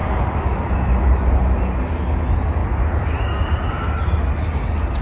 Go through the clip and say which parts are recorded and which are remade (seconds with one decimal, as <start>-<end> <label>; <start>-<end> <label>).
0.0-5.0 recorded